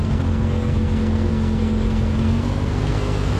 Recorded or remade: remade